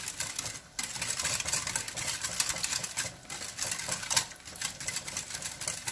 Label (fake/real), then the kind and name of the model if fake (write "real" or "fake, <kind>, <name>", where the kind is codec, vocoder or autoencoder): real